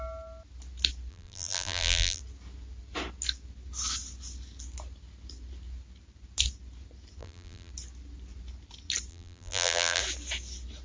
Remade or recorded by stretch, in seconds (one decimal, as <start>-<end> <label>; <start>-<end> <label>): 0.0-1.1 recorded; 1.1-2.2 remade; 2.2-7.2 recorded; 7.2-7.7 remade; 7.7-9.1 recorded; 9.1-10.0 remade; 10.0-10.8 recorded